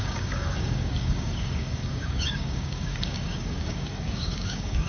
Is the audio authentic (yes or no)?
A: no